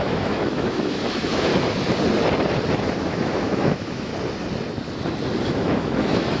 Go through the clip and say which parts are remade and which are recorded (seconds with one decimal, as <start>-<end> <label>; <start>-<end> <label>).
0.0-1.5 remade; 1.5-3.0 recorded; 3.0-4.1 remade; 4.1-5.5 recorded; 5.5-6.4 remade